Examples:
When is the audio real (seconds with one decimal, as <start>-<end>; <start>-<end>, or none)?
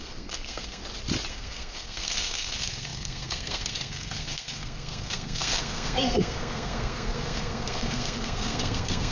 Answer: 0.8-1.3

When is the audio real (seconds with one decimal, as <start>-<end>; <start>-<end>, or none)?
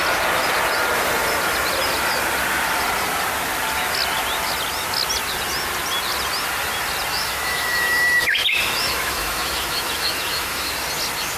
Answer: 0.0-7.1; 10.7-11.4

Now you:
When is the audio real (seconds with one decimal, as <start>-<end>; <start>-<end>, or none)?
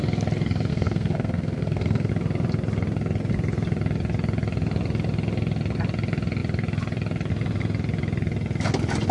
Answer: 0.0-0.7; 2.1-9.1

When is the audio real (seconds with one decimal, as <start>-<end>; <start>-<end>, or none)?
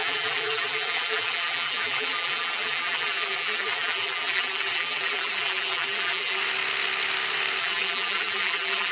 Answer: 6.4-7.6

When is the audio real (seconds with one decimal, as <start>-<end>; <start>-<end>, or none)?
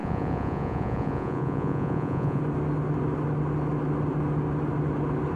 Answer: 2.4-5.4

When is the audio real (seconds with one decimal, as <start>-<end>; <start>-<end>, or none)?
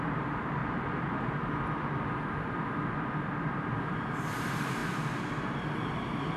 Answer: 0.6-3.8; 4.8-5.4